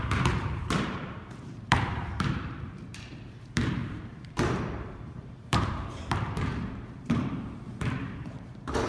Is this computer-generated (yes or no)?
yes